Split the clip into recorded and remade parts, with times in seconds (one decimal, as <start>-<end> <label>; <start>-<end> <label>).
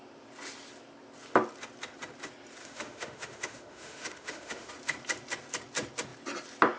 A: 0.0-2.6 recorded; 2.6-4.7 remade; 4.7-6.8 recorded